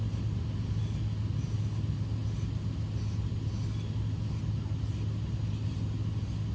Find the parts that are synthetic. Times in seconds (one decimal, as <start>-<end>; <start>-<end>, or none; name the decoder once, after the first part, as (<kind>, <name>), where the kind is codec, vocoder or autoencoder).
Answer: none